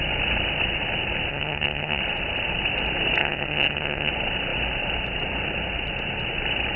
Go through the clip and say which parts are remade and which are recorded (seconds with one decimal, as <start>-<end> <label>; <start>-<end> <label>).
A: 0.0-1.3 recorded; 1.3-2.0 remade; 2.0-3.2 recorded; 3.2-4.1 remade; 4.1-6.8 recorded